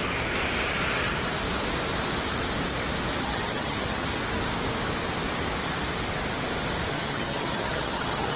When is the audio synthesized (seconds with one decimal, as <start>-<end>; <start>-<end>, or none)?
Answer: 3.2-4.1; 6.9-8.4